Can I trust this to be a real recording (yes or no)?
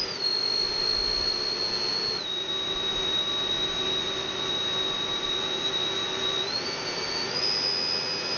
yes